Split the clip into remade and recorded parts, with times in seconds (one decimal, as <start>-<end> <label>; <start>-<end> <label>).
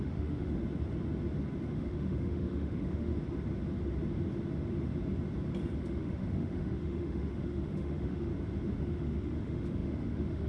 0.0-0.6 remade; 0.6-1.7 recorded; 1.7-3.1 remade; 3.1-5.8 recorded; 5.8-8.3 remade; 8.3-8.8 recorded; 8.8-10.5 remade